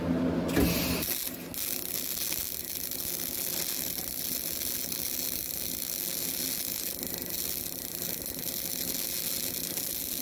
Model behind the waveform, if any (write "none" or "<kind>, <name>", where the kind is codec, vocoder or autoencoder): none